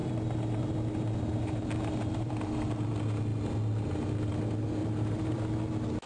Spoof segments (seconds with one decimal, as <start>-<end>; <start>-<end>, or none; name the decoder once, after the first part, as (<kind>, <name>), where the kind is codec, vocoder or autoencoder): 0.0-2.3 (vocoder, BigVGAN v2); 4.8-5.4